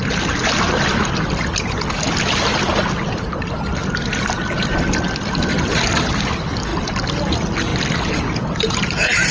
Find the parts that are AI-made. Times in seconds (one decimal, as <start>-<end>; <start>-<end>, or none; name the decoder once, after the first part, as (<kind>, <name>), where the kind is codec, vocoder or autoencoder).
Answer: none